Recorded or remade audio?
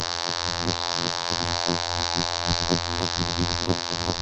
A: remade